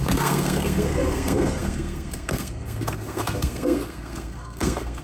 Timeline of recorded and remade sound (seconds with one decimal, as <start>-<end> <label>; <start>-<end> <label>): 0.0-5.0 remade